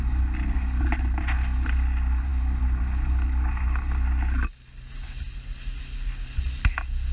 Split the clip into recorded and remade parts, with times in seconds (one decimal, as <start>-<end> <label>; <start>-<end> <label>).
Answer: 0.0-7.1 recorded